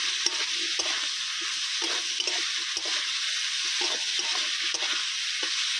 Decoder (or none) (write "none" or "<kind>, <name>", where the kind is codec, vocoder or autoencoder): none